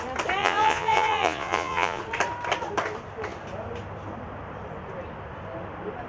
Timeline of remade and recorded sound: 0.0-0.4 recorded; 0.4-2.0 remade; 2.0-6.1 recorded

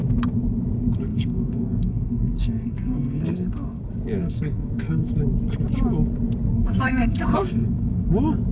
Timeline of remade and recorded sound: 0.0-1.1 recorded; 1.1-3.8 remade; 3.8-4.2 recorded; 4.2-5.1 remade; 5.1-6.5 recorded; 6.5-8.1 remade; 8.1-8.5 recorded

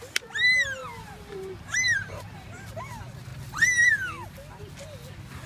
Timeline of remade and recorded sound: 0.0-0.8 recorded; 0.8-2.9 remade; 2.9-5.5 recorded

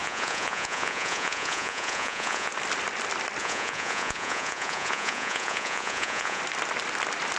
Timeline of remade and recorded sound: 0.0-2.5 remade; 2.5-3.4 recorded; 3.4-6.4 remade; 6.4-7.4 recorded

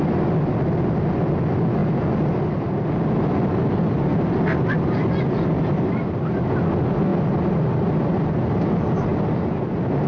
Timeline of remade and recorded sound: 0.0-10.1 recorded